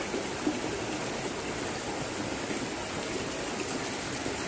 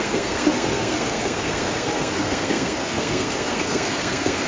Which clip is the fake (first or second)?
second